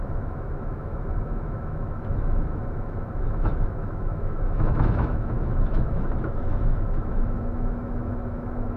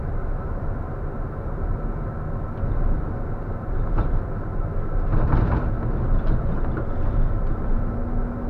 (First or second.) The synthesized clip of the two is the first